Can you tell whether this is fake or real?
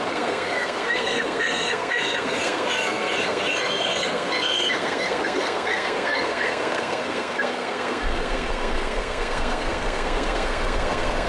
fake